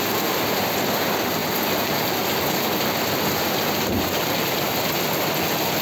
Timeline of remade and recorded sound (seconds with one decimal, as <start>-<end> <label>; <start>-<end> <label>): 0.0-1.4 recorded; 1.4-4.9 remade; 4.9-5.8 recorded